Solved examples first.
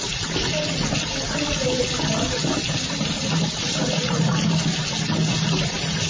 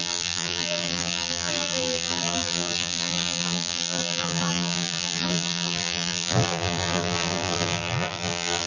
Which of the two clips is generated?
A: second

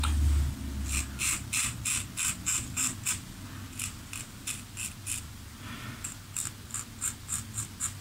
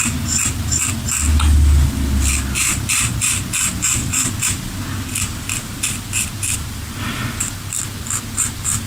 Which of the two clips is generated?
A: second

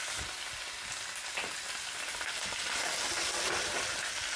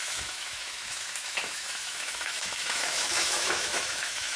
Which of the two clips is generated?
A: second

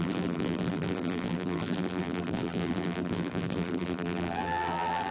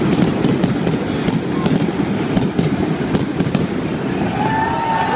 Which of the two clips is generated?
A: first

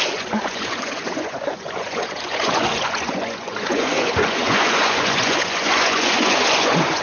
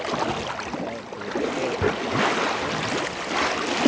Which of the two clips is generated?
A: first